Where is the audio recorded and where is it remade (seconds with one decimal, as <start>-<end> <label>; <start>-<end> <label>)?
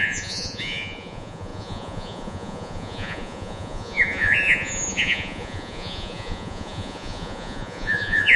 0.0-8.4 remade